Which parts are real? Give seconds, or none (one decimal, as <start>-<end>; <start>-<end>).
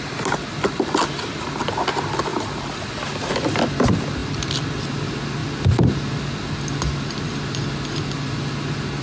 0.0-2.3; 2.9-4.2; 4.8-5.4; 6.2-9.0